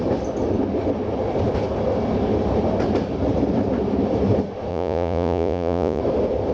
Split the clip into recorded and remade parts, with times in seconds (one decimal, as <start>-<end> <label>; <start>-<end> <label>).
0.0-4.7 recorded; 4.7-6.0 remade; 6.0-6.5 recorded

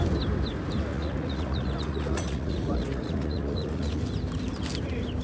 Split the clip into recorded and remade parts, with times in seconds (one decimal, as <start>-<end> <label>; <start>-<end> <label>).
0.0-0.9 recorded; 0.9-4.0 remade; 4.0-5.2 recorded

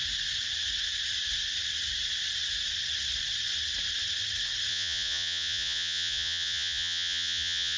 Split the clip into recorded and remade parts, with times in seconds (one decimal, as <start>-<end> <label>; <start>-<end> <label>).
0.0-4.7 recorded; 4.7-7.8 remade